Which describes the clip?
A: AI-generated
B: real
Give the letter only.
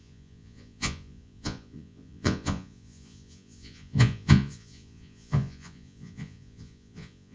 A